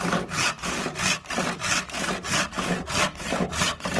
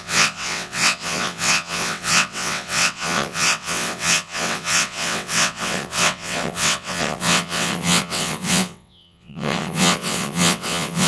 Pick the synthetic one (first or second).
second